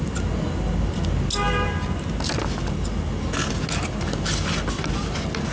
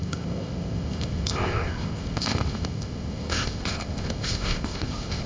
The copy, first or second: second